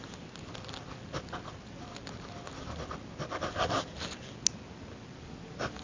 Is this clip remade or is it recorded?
recorded